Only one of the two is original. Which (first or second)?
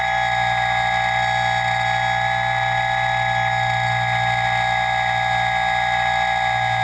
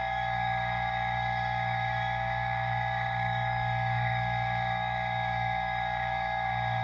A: first